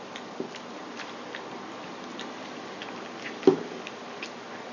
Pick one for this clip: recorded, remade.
recorded